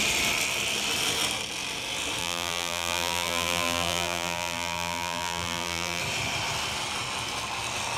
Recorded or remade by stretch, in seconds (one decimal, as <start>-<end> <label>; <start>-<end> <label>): 0.0-2.2 recorded; 2.2-6.0 remade; 6.0-8.0 recorded